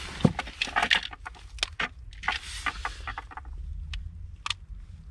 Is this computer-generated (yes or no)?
no